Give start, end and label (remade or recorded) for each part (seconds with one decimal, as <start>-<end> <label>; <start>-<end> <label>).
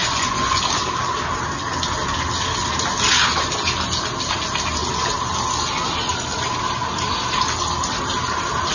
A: 0.0-0.6 remade; 0.6-8.7 recorded